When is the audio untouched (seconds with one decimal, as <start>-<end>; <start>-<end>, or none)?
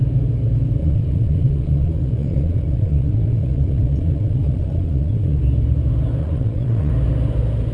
0.0-0.8; 5.4-6.2; 6.9-7.7